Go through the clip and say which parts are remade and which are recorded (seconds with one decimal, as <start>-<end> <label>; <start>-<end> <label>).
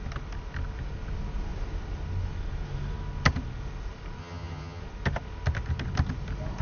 0.0-4.2 recorded; 4.2-4.8 remade; 4.8-6.6 recorded